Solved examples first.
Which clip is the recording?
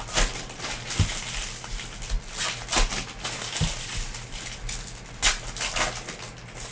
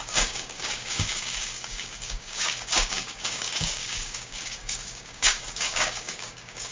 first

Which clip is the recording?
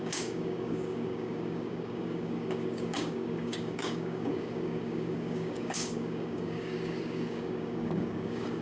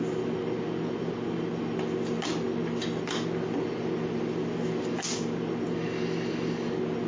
second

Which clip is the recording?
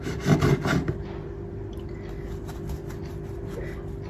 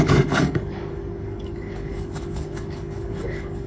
first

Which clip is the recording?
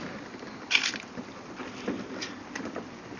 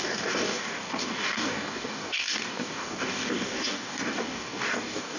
first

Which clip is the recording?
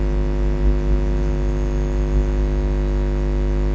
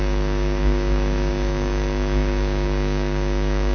first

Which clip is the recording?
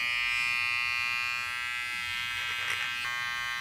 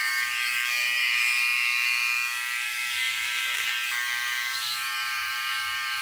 first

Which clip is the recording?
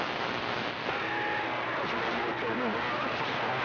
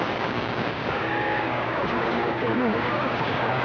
first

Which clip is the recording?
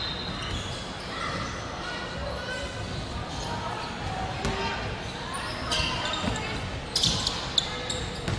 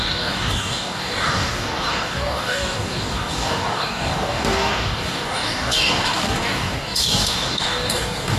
first